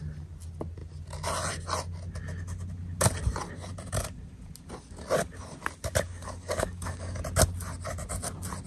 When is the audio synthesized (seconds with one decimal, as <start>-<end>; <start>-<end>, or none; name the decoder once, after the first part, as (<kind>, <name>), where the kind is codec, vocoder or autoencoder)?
6.1-7.2 (codec, DAC)